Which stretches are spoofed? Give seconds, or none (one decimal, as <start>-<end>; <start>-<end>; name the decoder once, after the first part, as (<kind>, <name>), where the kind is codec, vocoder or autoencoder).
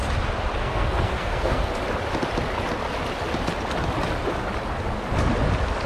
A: 0.6-1.7 (codec, SNAC)